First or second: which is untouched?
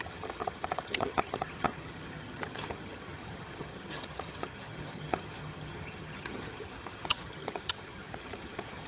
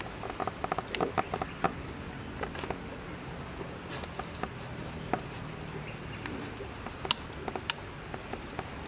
second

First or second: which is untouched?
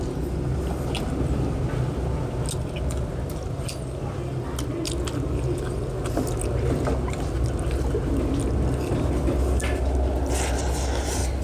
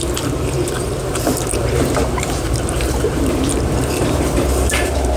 first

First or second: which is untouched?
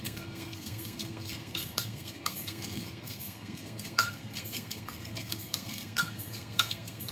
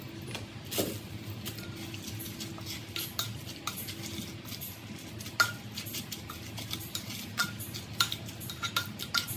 second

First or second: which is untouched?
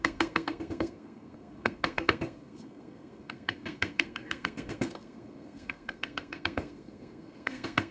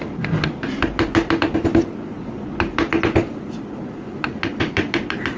second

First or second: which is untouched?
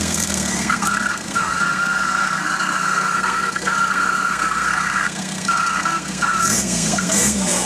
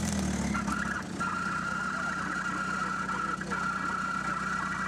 second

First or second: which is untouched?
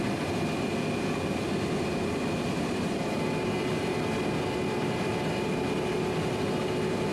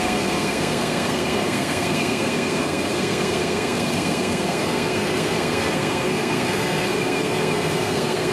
first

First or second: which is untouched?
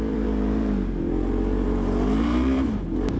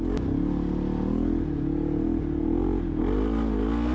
second